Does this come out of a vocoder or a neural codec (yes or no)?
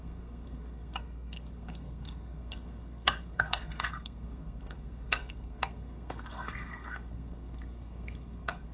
yes